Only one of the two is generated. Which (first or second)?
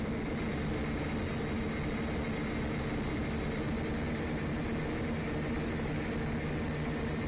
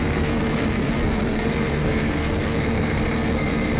second